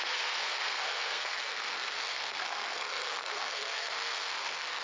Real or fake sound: fake